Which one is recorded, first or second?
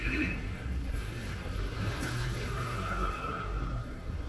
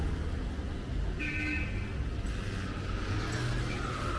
second